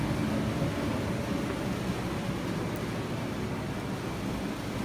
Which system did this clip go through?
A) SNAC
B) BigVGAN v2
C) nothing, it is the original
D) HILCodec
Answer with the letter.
C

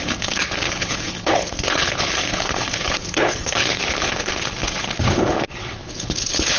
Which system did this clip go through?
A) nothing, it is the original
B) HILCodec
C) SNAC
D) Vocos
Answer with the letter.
B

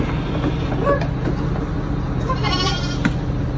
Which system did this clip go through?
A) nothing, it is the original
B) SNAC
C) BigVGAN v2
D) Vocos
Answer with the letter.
A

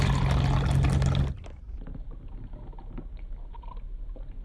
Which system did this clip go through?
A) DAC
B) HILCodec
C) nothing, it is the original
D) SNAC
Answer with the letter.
C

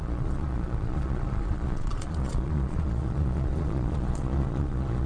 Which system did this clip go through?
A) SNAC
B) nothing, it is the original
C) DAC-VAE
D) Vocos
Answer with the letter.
D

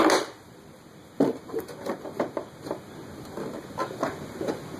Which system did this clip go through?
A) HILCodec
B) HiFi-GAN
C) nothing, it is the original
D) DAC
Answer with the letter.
C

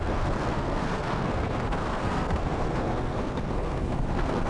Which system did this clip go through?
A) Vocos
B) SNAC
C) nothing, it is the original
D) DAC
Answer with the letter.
B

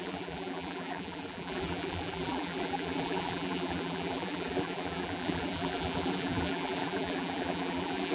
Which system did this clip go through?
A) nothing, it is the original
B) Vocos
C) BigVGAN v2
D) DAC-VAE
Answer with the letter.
C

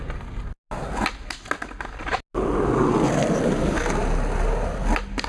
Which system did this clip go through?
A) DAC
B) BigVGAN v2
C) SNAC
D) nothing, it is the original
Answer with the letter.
D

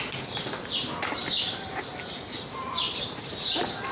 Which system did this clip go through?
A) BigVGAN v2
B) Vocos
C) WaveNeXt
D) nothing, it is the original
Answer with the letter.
D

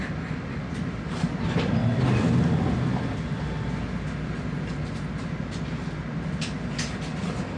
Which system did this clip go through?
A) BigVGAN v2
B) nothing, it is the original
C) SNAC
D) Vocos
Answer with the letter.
B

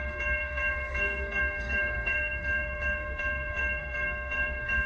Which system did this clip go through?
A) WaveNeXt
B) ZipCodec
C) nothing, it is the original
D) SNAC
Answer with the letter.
D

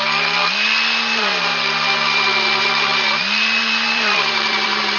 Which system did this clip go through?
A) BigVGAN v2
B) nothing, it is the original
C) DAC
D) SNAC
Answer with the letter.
A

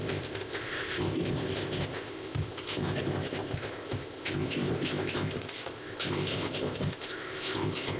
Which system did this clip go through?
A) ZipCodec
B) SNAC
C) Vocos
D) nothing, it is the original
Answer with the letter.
A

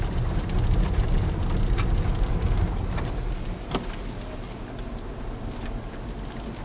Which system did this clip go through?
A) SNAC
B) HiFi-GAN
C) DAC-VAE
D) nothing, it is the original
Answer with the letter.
D